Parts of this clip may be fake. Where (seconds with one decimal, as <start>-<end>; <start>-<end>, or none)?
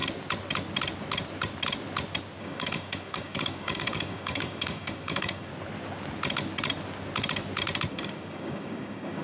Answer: 2.4-5.5; 7.9-9.2